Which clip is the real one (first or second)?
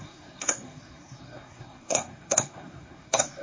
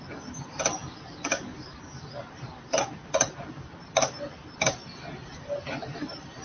second